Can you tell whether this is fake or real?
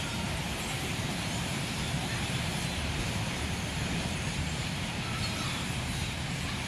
fake